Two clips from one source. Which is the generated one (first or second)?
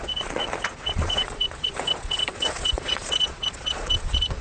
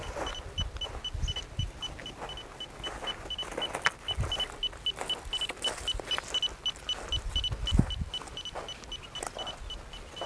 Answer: first